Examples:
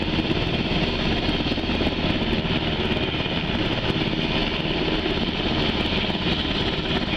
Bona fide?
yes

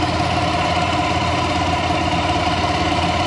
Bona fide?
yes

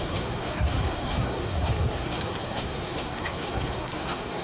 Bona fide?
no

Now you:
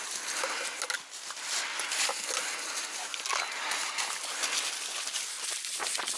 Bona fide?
yes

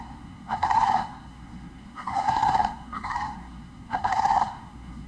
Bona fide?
no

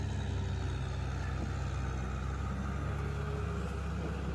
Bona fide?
yes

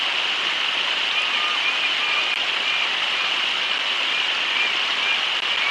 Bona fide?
yes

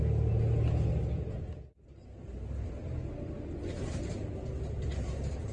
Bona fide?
yes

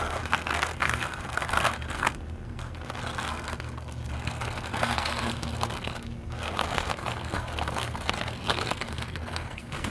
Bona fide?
no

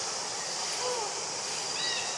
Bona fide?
yes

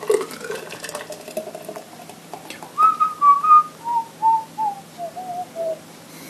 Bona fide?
yes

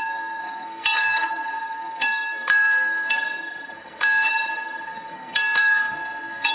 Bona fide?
no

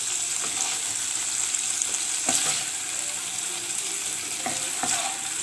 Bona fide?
yes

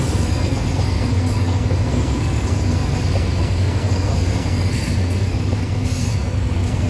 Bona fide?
no